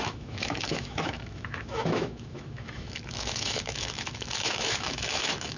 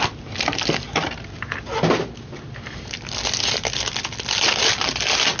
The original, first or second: second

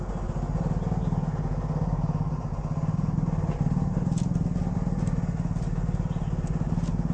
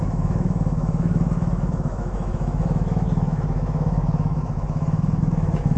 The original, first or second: first